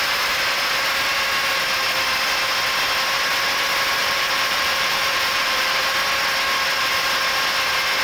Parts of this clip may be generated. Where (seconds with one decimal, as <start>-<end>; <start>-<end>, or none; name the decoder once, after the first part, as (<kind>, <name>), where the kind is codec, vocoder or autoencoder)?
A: 4.0-5.8 (vocoder, BigVGAN v2)